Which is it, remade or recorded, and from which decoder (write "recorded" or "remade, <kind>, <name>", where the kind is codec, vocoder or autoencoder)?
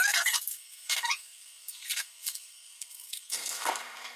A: remade, codec, SNAC